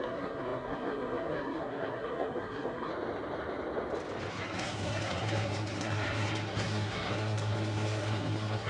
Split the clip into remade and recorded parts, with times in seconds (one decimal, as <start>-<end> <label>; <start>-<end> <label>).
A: 0.0-2.9 remade; 2.9-4.3 recorded; 4.3-8.7 remade